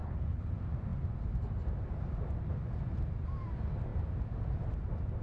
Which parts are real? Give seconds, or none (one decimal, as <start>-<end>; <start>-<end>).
0.5-5.2